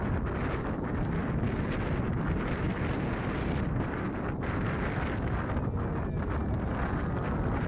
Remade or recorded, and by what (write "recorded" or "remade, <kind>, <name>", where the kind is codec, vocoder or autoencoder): recorded